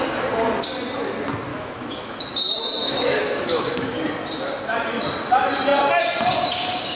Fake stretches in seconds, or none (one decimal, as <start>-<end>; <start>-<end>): 1.5-2.2; 2.6-4.0